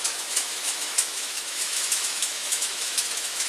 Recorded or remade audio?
remade